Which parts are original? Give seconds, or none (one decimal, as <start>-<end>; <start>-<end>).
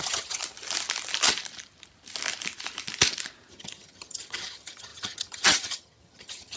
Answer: 0.4-3.5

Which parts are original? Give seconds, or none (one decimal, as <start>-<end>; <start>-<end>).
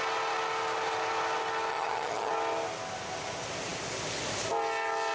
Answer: 0.0-1.7; 2.3-5.1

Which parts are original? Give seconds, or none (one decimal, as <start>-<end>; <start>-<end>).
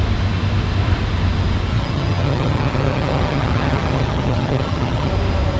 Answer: 0.0-1.7; 5.1-5.6